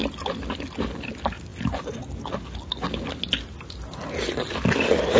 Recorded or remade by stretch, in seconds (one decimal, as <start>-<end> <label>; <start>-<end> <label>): 0.0-5.2 recorded